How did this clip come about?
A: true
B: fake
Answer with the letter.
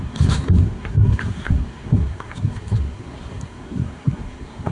B